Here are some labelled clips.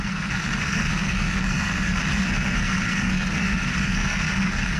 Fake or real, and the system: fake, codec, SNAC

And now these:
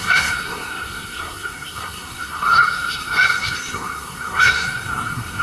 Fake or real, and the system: fake, codec, SNAC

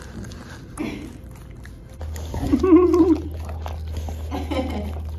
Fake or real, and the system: real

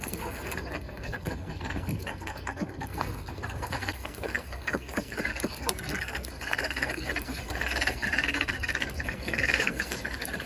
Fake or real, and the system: fake, codec, SNAC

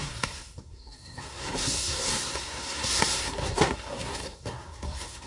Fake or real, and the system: fake, codec, SNAC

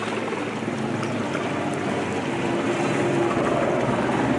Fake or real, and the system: real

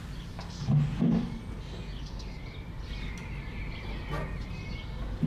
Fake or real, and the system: real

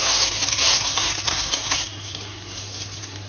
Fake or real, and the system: fake, codec, SNAC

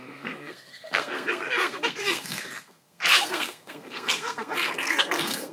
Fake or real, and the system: fake, codec, SNAC